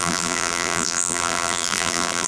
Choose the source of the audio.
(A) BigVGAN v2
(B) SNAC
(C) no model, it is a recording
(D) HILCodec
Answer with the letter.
A